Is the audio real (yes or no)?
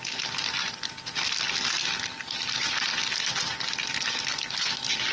yes